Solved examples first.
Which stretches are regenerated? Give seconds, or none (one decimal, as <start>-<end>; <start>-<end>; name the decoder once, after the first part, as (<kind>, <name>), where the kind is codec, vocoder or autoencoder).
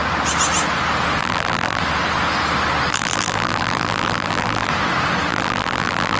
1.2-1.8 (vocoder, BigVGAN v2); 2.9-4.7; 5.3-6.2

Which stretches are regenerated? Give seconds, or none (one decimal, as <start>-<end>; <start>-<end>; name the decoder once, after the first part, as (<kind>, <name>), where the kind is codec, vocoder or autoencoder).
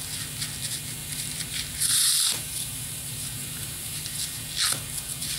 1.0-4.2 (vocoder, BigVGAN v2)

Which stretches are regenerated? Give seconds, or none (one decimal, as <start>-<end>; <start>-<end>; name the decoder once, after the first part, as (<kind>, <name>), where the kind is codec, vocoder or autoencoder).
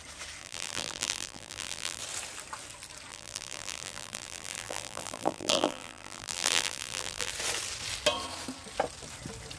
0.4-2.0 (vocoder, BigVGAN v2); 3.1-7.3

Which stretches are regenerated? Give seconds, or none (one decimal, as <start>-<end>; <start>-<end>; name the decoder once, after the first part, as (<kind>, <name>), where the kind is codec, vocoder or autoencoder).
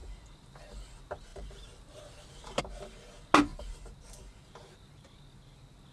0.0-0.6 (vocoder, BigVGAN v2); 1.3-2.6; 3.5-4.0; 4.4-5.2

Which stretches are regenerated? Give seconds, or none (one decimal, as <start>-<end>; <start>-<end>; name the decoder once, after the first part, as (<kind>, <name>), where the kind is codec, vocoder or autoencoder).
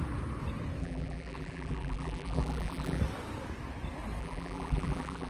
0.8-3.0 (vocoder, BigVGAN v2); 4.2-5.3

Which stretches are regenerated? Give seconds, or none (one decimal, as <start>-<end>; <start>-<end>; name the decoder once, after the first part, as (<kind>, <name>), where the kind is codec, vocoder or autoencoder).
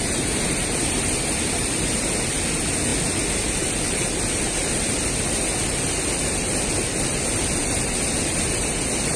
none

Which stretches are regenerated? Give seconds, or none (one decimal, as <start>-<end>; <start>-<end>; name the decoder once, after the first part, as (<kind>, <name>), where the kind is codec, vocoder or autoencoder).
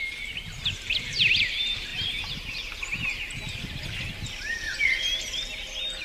0.0-1.9 (vocoder, BigVGAN v2); 4.5-6.0